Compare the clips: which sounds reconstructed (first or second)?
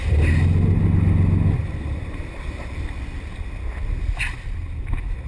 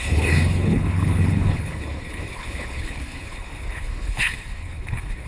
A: second